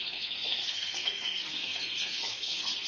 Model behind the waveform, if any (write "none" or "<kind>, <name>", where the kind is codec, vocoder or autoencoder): codec, SNAC